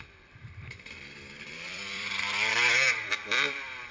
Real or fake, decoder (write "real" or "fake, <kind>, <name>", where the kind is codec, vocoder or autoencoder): fake, vocoder, BigVGAN v2